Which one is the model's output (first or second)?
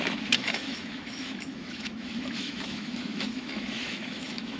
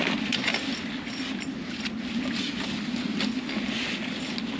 first